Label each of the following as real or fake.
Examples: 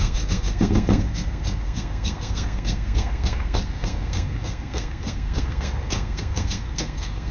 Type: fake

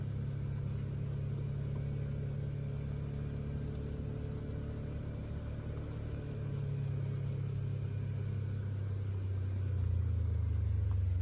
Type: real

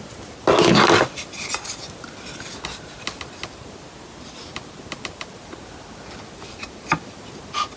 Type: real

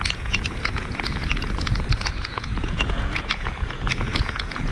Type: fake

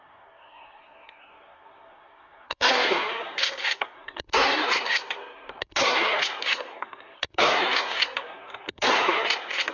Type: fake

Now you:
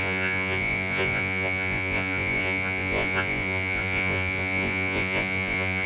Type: fake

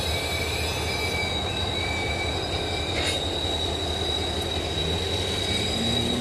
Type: real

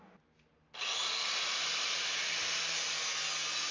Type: real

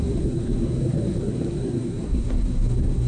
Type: fake